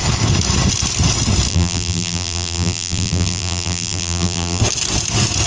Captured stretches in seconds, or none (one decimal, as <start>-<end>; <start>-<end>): 0.0-1.5; 4.6-5.5